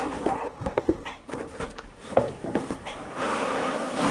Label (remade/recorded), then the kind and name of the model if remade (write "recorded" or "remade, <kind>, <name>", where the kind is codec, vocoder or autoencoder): remade, codec, SNAC